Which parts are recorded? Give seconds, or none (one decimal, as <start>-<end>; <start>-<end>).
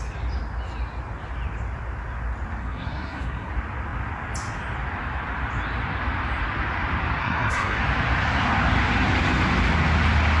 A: 0.0-2.6; 3.5-7.2; 7.8-10.4